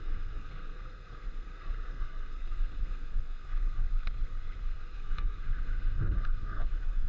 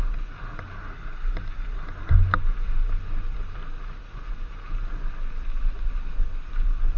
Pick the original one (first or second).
second